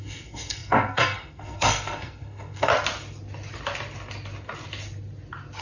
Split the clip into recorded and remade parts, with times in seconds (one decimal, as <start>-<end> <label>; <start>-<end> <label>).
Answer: 0.0-2.7 remade; 2.7-5.6 recorded